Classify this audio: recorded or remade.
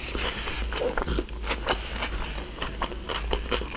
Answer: recorded